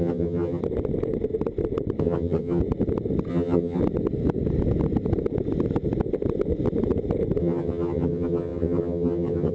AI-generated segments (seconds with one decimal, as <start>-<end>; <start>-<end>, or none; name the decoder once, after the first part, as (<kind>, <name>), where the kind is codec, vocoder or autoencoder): 0.0-0.6 (vocoder, HiFi-GAN); 2.0-2.6; 3.3-3.8; 7.4-9.5